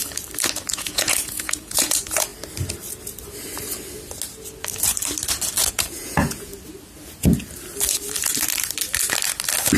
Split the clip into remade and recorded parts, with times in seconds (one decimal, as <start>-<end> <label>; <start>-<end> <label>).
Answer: 0.0-0.7 recorded; 0.7-2.3 remade; 2.3-5.7 recorded; 5.7-6.5 remade; 6.5-9.8 recorded